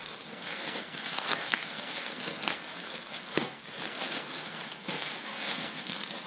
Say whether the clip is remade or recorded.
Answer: remade